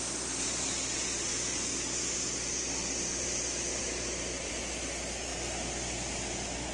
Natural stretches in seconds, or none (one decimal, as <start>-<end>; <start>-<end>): 0.0-6.7